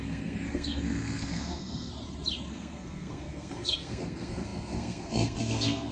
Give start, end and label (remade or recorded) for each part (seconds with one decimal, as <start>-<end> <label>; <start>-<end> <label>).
0.0-1.9 remade; 1.9-2.5 recorded; 2.5-5.9 remade